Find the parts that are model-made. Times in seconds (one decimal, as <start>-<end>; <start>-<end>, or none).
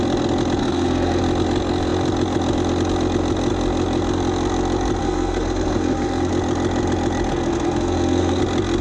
0.6-1.2; 5.0-6.3; 7.3-8.4